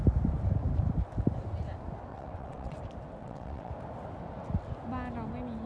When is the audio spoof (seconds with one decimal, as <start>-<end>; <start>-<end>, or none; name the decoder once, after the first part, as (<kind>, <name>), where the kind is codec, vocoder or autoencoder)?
2.1-2.8 (vocoder, WaveNeXt); 3.2-3.7